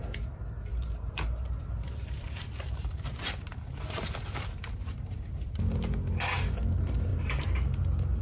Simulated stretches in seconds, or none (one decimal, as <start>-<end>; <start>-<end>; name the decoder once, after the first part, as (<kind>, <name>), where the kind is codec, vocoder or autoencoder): 0.7-5.6 (vocoder, BigVGAN v2); 7.1-8.2